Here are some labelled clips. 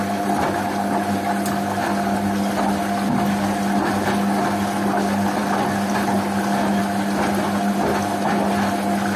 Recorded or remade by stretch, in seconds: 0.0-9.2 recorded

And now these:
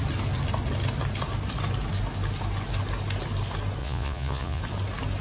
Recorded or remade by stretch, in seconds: 0.0-3.8 recorded; 3.8-4.6 remade; 4.6-5.2 recorded

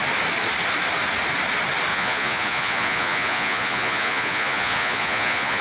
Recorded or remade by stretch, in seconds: 0.0-1.9 recorded; 1.9-5.6 remade

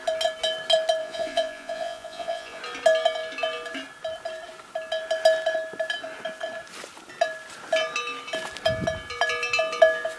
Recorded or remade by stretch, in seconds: 0.0-1.0 recorded; 1.0-2.6 remade; 2.6-10.2 recorded

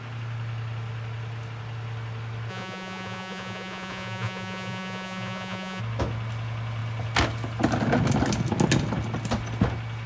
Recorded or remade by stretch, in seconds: 0.0-2.5 recorded; 2.5-5.8 remade; 5.8-10.1 recorded

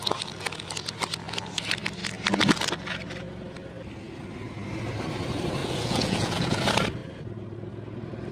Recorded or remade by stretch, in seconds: 0.0-5.6 recorded; 5.6-6.6 remade; 6.6-8.3 recorded

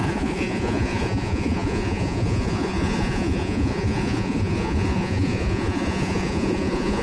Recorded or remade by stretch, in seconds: 0.0-7.0 remade